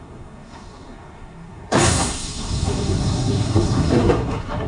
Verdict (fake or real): fake